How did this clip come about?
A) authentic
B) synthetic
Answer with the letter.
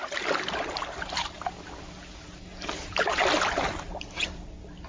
A